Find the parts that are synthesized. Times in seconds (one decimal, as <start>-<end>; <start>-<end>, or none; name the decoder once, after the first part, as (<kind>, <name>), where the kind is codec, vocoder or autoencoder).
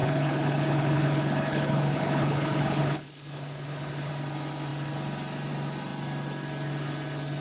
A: 0.0-4.1 (codec, HILCodec)